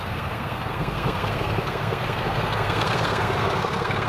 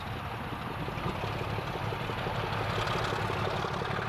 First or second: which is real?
second